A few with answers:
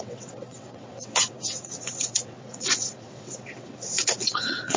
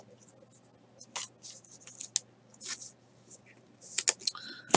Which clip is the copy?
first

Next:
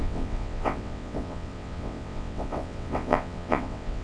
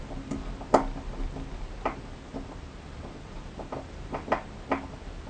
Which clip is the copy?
first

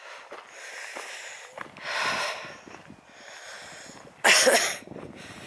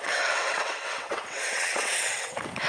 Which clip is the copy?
second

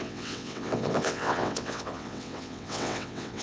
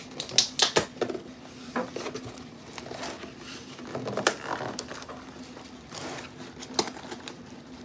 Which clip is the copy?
first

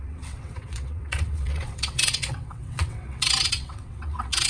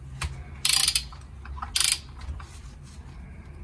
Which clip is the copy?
first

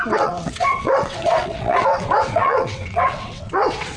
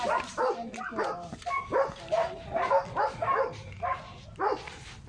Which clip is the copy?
first